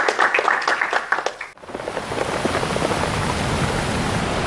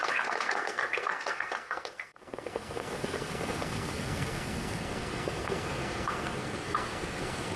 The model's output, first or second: second